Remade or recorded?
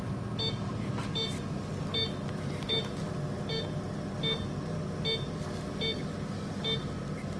recorded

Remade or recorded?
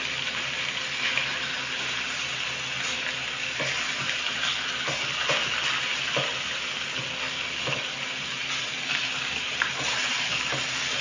recorded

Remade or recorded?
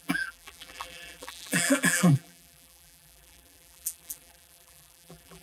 remade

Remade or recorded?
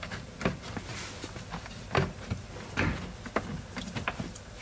recorded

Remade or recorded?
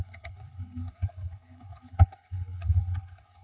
remade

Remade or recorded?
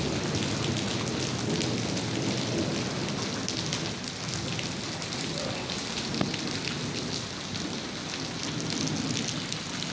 recorded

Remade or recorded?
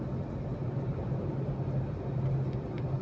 recorded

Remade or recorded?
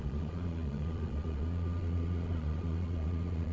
remade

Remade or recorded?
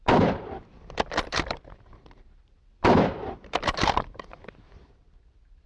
remade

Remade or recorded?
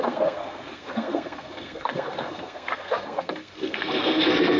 remade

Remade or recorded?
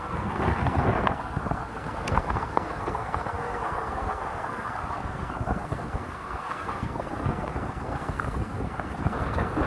remade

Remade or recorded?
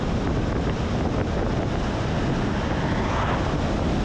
recorded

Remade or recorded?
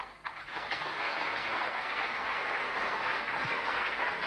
remade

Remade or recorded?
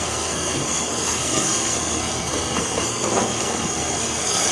remade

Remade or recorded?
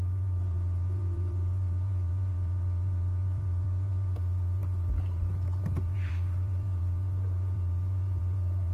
remade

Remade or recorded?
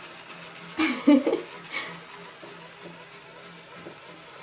recorded